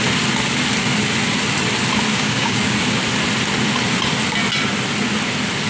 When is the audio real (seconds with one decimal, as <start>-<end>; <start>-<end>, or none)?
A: 0.0-2.1; 2.7-5.7